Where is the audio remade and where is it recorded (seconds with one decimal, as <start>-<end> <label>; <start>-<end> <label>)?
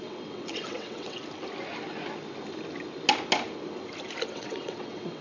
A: 0.0-1.2 remade; 1.2-4.3 recorded; 4.3-5.2 remade